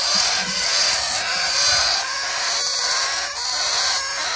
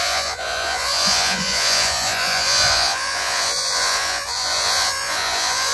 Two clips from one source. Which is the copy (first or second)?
second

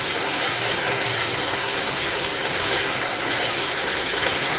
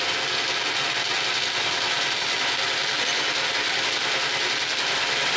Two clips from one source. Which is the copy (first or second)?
first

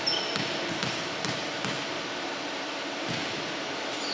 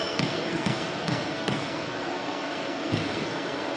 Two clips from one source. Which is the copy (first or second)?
second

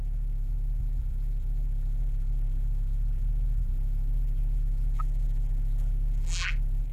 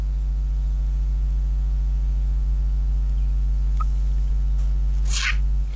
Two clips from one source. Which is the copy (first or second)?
first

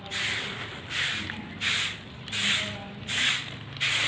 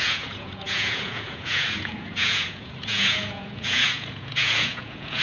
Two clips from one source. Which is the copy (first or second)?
second